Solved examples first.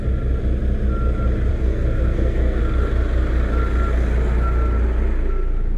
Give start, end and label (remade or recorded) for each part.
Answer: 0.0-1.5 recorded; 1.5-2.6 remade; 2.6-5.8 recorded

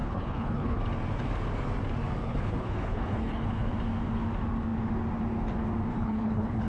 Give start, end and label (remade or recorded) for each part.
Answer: 0.0-0.8 remade; 0.8-2.2 recorded; 2.2-3.7 remade; 3.7-5.9 recorded; 5.9-6.7 remade

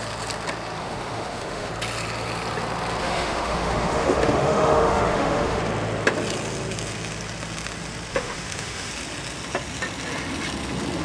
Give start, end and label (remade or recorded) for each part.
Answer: 0.0-0.8 recorded; 0.8-1.7 remade; 1.7-3.0 recorded; 3.0-5.6 remade; 5.6-8.1 recorded; 8.1-8.9 remade; 8.9-11.0 recorded

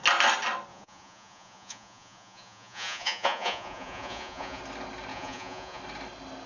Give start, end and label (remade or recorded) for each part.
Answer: 0.0-0.7 recorded; 0.7-4.6 remade; 4.6-5.1 recorded; 5.1-5.8 remade; 5.8-6.5 recorded

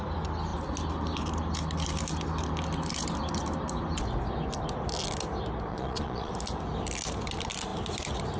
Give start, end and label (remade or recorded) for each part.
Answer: 0.0-5.7 recorded; 5.7-6.3 remade; 6.3-8.4 recorded

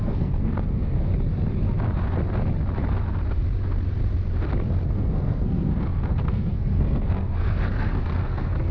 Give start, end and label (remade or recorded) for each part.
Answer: 0.0-1.1 remade; 1.1-4.9 recorded; 4.9-8.7 remade